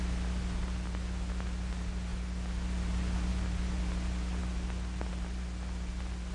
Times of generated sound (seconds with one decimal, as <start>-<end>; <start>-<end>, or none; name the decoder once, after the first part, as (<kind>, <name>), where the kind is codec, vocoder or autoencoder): none